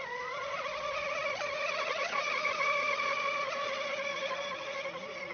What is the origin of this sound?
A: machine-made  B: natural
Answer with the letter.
A